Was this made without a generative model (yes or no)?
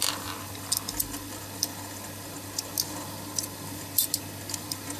yes